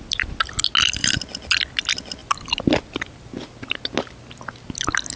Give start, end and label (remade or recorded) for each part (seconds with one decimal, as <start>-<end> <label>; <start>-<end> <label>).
0.0-5.2 recorded